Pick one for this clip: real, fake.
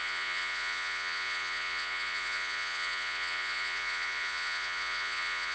fake